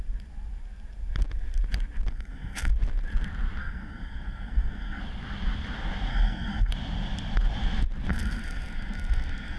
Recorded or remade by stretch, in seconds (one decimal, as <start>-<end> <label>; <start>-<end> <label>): 0.0-2.1 recorded; 2.1-2.7 remade; 2.7-3.6 recorded; 3.6-5.0 remade; 5.0-6.1 recorded; 6.1-6.7 remade; 6.7-8.1 recorded; 8.1-9.6 remade